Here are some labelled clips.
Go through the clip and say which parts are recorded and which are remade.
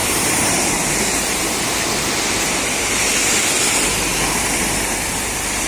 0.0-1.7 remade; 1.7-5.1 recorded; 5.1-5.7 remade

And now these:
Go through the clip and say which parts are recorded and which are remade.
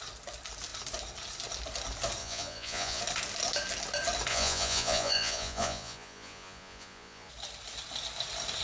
0.0-2.2 recorded; 2.2-3.0 remade; 3.0-4.3 recorded; 4.3-7.3 remade; 7.3-8.6 recorded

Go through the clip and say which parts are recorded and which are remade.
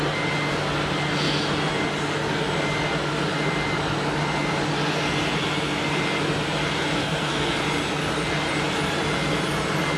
0.0-7.0 recorded; 7.0-7.6 remade; 7.6-10.0 recorded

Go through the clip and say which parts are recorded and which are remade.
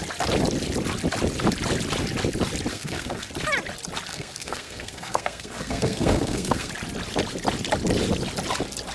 0.0-2.7 recorded; 2.7-3.3 remade; 3.3-4.1 recorded; 4.1-6.7 remade; 6.7-8.9 recorded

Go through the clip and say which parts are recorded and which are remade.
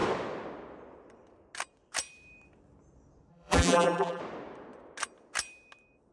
0.0-3.3 recorded; 3.3-4.2 remade; 4.2-6.1 recorded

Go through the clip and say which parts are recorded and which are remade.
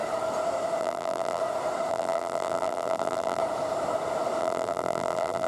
0.0-0.8 recorded; 0.8-1.4 remade; 1.4-1.9 recorded; 1.9-3.4 remade; 3.4-4.4 recorded; 4.4-5.5 remade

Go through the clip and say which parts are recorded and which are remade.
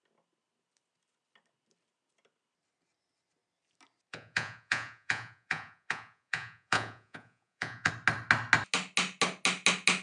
0.0-4.1 recorded; 4.1-7.9 remade; 7.9-10.0 recorded